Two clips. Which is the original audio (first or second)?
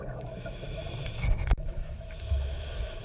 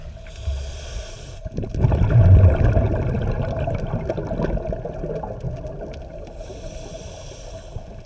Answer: second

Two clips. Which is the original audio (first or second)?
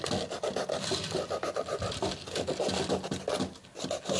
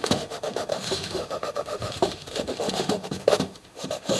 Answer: first